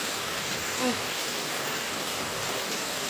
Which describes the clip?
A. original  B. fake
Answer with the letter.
B